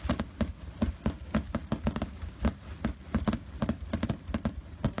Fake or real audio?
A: real